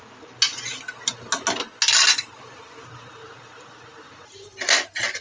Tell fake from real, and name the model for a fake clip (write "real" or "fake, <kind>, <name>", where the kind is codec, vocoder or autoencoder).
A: real